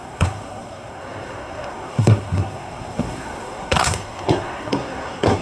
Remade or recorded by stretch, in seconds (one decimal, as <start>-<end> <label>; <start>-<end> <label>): 0.0-5.4 remade